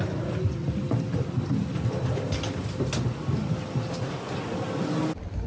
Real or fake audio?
real